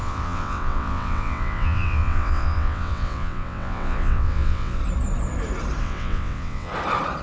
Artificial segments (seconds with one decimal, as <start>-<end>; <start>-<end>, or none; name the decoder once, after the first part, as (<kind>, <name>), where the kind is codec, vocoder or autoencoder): 0.0-4.8 (vocoder, WaveNeXt); 5.8-6.7